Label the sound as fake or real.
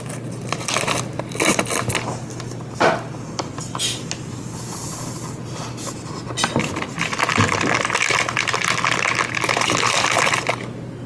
real